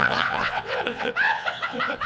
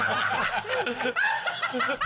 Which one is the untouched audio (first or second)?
second